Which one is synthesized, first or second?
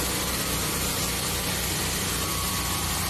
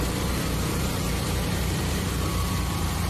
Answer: second